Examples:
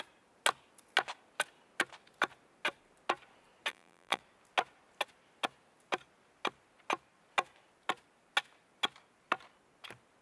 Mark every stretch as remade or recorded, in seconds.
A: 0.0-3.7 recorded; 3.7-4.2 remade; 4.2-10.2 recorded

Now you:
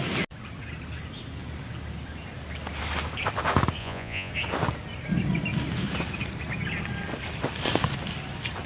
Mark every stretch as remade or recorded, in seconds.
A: 0.0-3.8 recorded; 3.8-4.3 remade; 4.3-8.7 recorded

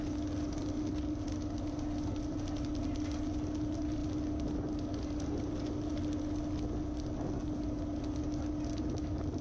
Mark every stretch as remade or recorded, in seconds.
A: 0.0-9.4 recorded